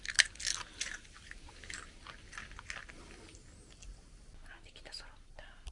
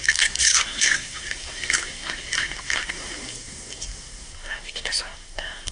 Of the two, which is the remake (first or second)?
second